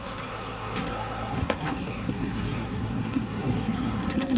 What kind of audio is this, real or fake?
fake